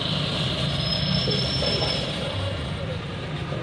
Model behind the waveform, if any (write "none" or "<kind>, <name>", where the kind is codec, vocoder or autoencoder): none